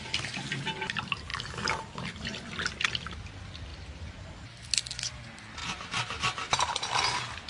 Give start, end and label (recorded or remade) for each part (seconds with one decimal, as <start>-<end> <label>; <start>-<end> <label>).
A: 0.0-5.6 recorded; 5.6-7.0 remade; 7.0-7.5 recorded